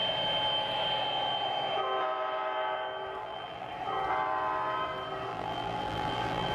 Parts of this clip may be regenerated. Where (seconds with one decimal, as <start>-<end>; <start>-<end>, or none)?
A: 3.2-3.7; 5.3-6.5